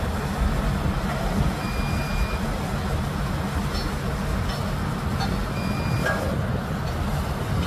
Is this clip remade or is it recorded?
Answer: recorded